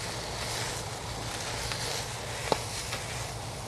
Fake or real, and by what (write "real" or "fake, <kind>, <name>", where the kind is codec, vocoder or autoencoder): real